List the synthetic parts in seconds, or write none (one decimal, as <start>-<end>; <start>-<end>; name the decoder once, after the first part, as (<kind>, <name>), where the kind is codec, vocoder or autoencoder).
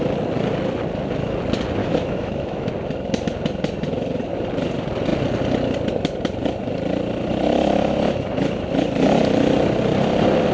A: 1.8-2.7 (autoencoder, DAC-VAE)